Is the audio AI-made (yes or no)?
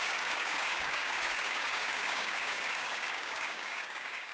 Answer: yes